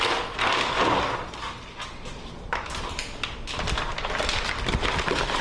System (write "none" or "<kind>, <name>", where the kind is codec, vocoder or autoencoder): none